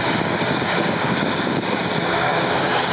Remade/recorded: remade